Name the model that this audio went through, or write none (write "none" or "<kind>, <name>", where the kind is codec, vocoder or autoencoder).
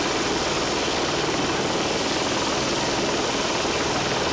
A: none